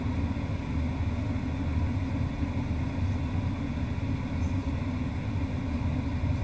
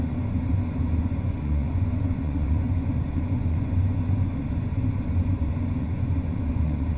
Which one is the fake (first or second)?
second